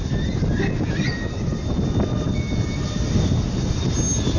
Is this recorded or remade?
recorded